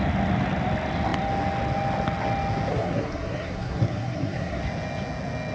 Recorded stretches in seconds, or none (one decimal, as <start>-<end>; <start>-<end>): 0.0-2.7; 4.6-5.5